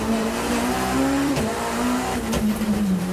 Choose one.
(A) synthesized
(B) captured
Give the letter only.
A